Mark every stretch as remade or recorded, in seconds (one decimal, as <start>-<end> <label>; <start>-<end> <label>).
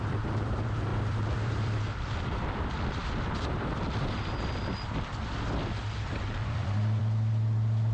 0.0-7.9 remade